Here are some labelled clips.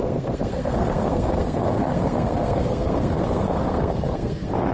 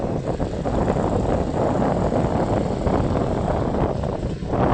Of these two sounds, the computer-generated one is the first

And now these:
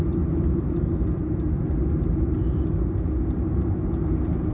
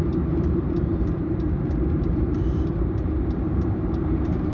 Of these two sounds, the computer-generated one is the second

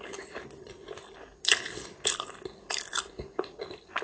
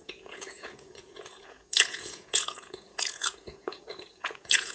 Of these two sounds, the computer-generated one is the second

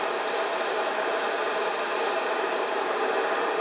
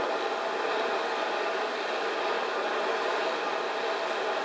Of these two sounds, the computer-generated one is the first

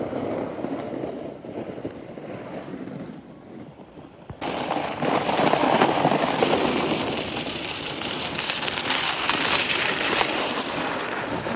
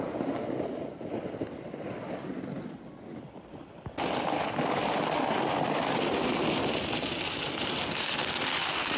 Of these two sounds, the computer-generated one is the first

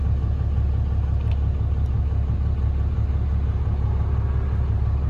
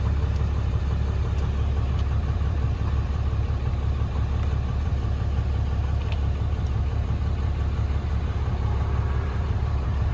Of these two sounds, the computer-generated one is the second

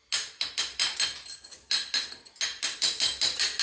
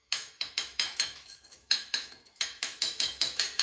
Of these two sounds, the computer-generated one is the second